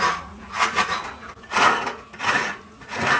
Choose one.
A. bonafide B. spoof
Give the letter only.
B